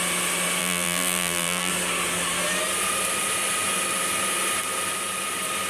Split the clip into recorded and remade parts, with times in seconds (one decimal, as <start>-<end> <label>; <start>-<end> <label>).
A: 0.0-0.6 recorded; 0.6-1.7 remade; 1.7-5.7 recorded